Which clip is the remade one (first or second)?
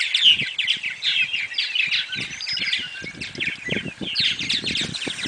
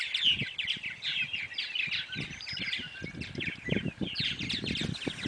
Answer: second